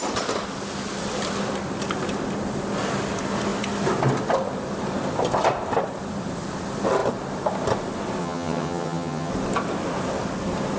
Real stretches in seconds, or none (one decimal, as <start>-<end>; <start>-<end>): 0.0-8.2; 9.3-10.8